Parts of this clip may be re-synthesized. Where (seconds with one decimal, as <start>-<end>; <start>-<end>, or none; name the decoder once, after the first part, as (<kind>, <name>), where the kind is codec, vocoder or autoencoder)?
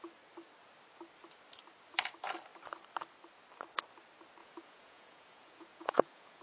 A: 4.4-6.4 (vocoder, Vocos)